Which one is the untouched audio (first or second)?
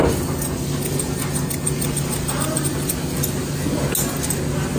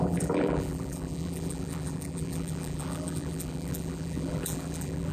first